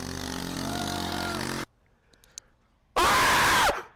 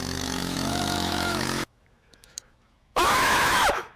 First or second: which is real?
first